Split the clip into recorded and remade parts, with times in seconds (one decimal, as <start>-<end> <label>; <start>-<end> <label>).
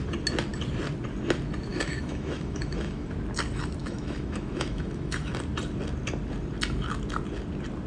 0.0-1.7 recorded; 1.7-3.1 remade; 3.1-3.8 recorded; 3.8-5.3 remade; 5.3-7.9 recorded